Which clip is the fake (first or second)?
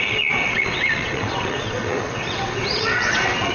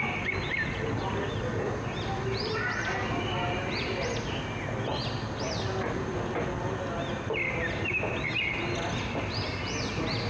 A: first